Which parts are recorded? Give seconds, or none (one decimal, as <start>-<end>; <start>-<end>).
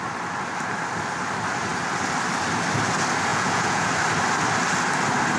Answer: 0.0-3.3; 3.9-5.4